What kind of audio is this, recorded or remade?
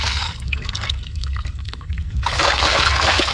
remade